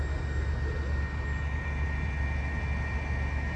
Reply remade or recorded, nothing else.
recorded